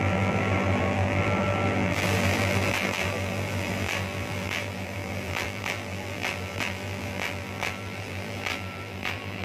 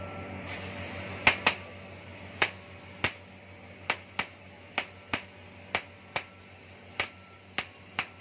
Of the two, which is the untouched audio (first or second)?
second